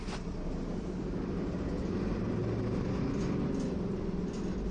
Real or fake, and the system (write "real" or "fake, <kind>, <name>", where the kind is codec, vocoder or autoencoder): real